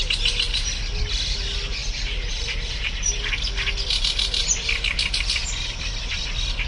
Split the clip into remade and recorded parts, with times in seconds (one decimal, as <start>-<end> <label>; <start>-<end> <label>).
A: 0.0-1.8 recorded; 1.8-3.3 remade; 3.3-6.7 recorded